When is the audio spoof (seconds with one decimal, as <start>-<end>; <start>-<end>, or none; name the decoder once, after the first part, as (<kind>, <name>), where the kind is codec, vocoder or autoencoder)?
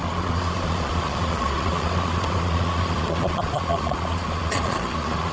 0.0-5.3 (vocoder, Vocos)